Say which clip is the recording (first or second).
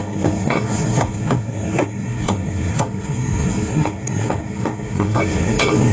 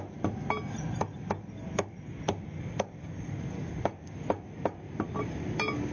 second